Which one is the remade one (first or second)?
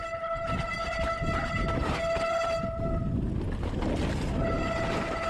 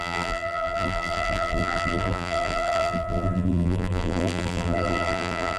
second